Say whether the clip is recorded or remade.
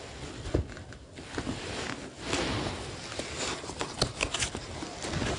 recorded